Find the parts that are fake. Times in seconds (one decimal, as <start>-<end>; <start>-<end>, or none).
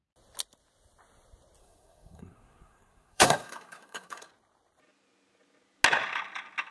1.6-4.3